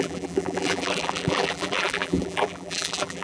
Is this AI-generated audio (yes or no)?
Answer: yes